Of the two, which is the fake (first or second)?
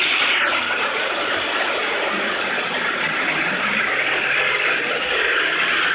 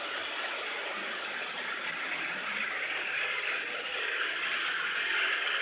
first